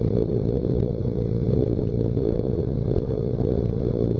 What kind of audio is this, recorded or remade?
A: remade